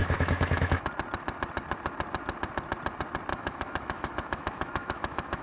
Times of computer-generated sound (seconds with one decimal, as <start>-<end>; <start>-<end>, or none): 0.0-0.9; 3.3-5.4